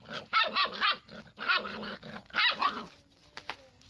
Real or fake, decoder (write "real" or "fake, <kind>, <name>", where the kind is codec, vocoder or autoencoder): real